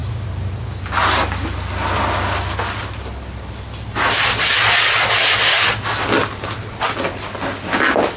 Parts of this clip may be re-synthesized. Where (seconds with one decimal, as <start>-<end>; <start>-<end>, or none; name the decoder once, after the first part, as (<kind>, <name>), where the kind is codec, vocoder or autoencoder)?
none